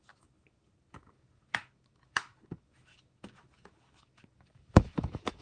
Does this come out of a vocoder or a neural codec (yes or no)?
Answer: yes